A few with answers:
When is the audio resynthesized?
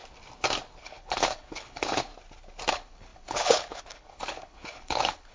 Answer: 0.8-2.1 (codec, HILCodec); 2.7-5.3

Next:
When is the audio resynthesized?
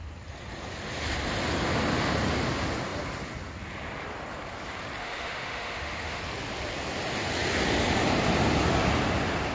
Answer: 5.0-6.2 (autoencoder, DAC-VAE)